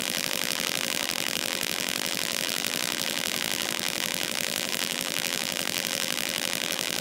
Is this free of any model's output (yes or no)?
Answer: no